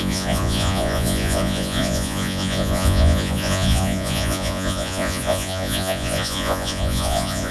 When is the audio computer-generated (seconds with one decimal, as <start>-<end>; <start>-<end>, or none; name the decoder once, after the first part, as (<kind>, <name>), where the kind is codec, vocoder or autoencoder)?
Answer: 0.0-7.5 (vocoder, Vocos)